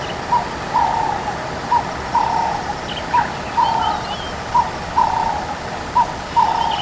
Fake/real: real